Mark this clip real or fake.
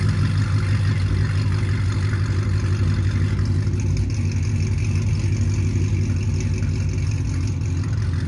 real